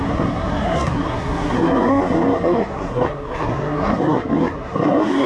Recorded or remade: remade